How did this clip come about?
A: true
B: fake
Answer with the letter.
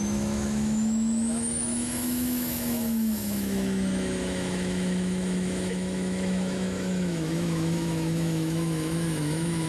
B